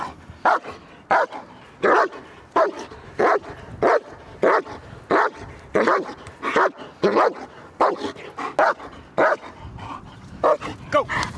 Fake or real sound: real